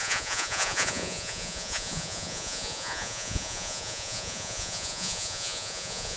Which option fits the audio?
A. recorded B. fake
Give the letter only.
B